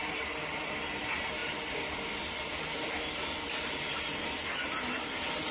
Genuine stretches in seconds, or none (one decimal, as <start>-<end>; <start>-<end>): 0.0-5.5